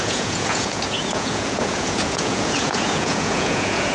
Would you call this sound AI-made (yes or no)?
yes